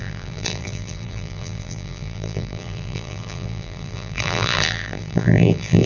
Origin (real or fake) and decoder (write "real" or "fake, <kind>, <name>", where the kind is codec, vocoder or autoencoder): fake, vocoder, BigVGAN v2